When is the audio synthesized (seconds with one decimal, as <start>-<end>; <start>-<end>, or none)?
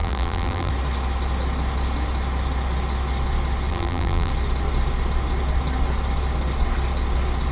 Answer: 0.0-0.7; 3.7-4.3